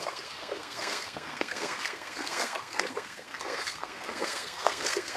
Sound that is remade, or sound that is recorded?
remade